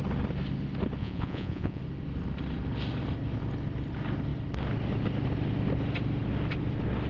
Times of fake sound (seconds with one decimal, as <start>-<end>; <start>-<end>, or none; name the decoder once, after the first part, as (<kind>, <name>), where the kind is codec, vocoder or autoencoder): 1.0-1.8 (vocoder, Vocos)